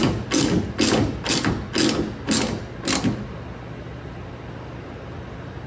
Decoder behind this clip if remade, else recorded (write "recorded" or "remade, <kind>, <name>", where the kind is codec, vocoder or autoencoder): recorded